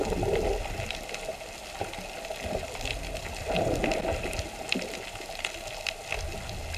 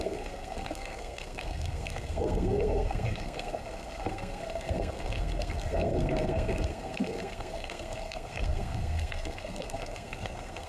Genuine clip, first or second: first